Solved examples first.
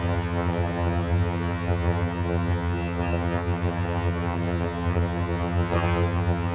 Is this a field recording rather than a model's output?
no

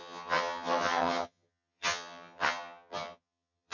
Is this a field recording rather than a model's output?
no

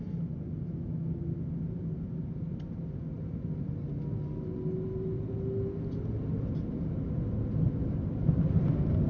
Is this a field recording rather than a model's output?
yes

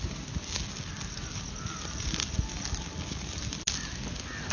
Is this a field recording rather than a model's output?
yes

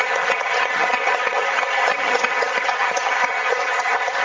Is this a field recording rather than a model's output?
no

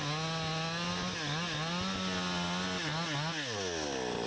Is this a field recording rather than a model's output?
yes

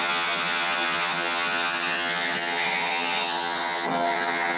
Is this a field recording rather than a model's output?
no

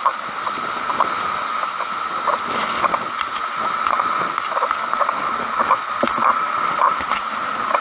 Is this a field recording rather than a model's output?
yes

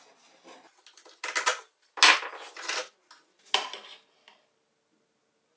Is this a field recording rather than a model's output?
yes